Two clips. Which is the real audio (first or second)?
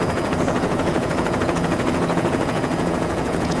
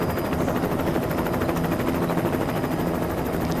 second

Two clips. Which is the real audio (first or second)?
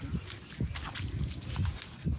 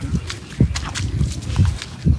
second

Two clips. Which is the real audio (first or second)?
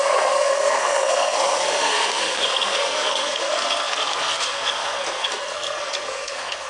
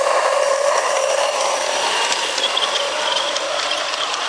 second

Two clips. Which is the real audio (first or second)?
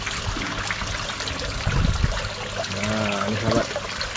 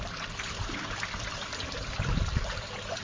first